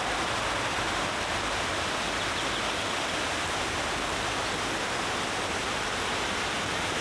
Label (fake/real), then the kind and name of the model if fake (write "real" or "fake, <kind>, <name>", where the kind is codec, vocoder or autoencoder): real